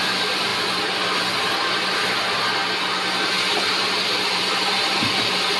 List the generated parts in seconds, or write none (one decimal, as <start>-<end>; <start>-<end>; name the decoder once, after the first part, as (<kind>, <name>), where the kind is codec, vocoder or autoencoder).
0.0-2.6 (vocoder, BigVGAN v2); 4.1-5.6